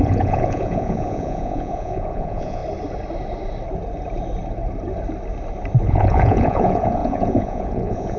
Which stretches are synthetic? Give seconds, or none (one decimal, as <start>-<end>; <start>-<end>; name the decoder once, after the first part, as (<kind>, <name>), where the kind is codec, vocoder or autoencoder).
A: 0.0-2.6 (vocoder, Vocos); 5.9-8.2